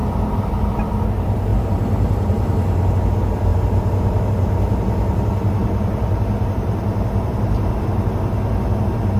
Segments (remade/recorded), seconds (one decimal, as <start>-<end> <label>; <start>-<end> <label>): 0.0-1.5 recorded; 1.5-2.3 remade; 2.3-3.5 recorded; 3.5-4.3 remade; 4.3-5.6 recorded; 5.6-7.7 remade; 7.7-9.2 recorded